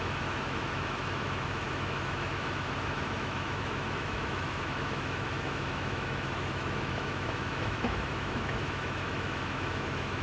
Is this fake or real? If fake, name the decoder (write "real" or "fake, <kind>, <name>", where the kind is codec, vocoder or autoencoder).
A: fake, autoencoder, DAC-VAE